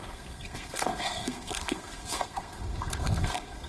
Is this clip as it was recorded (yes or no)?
no